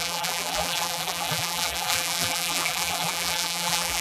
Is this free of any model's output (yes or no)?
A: no